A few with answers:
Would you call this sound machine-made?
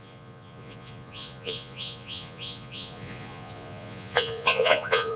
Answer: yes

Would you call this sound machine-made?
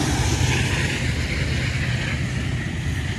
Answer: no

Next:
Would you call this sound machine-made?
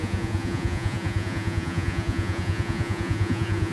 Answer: yes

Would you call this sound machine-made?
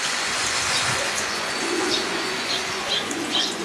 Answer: yes